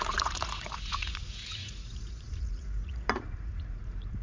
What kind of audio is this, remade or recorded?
remade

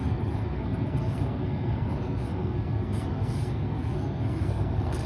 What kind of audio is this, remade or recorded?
remade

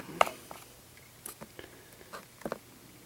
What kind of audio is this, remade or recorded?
recorded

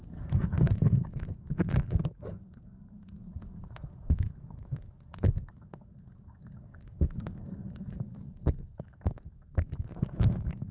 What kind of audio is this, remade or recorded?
remade